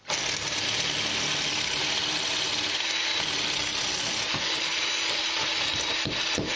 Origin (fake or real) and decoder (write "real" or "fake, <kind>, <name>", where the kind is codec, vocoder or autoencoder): real